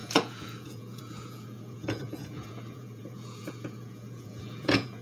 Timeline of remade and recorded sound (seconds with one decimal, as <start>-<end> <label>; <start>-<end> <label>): 0.0-5.0 remade